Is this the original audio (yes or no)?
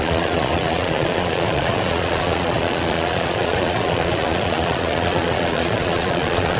no